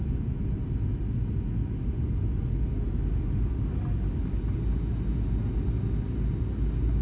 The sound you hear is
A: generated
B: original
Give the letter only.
B